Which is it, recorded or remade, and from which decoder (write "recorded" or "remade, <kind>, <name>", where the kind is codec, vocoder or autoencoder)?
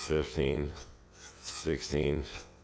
remade, vocoder, WaveNeXt